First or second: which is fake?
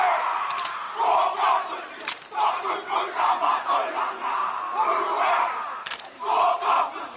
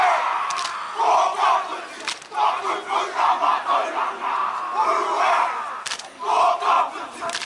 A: first